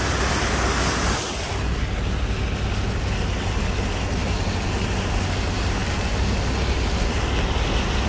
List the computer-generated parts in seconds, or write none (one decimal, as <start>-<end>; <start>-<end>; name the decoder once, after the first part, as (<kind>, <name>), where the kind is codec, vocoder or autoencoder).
none